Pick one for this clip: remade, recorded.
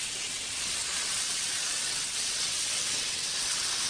remade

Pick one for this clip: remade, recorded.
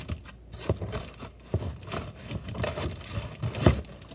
recorded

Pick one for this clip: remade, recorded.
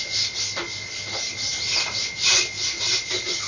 recorded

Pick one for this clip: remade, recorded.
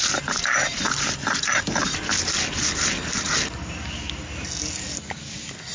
recorded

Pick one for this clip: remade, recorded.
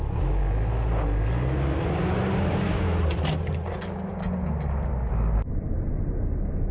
recorded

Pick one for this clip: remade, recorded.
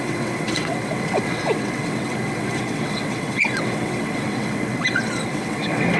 remade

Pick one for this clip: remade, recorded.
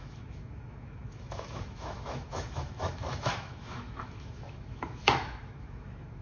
remade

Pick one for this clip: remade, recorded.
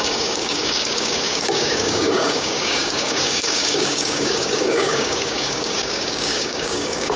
remade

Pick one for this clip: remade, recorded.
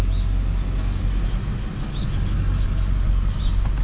recorded